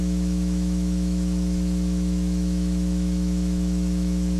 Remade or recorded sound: remade